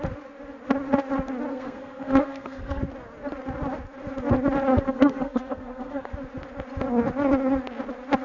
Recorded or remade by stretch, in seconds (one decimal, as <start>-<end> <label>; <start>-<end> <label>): 0.0-1.5 recorded; 1.5-2.8 remade; 2.8-4.7 recorded; 4.7-6.1 remade; 6.1-8.2 recorded